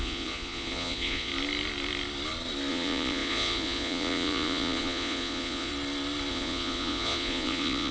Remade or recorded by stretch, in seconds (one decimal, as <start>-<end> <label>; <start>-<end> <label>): 0.0-1.3 remade; 1.3-2.7 recorded; 2.7-5.7 remade; 5.7-6.3 recorded; 6.3-7.9 remade